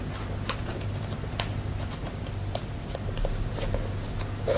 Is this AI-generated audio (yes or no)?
no